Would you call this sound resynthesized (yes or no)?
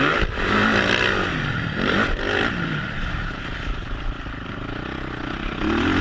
no